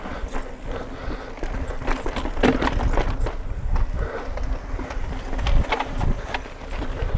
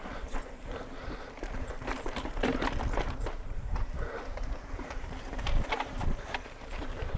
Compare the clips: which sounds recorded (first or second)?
first